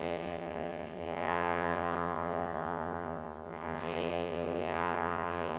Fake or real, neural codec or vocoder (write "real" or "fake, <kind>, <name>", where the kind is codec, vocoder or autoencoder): fake, vocoder, HiFi-GAN